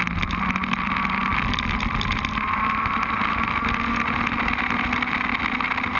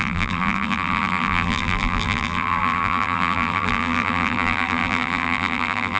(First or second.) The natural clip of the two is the first